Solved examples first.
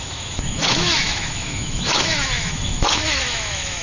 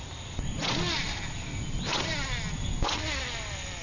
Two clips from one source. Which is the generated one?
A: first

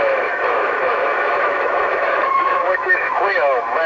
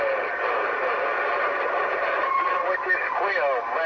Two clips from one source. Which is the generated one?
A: first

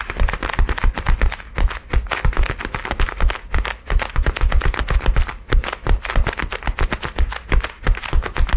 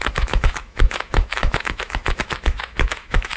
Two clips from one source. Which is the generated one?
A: second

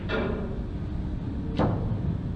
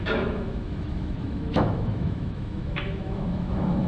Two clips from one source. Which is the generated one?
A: second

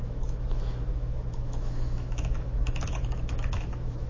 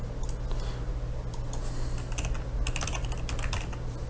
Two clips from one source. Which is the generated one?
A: first